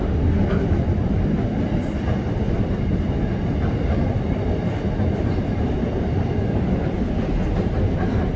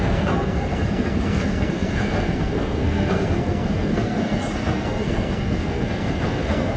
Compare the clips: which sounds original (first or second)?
first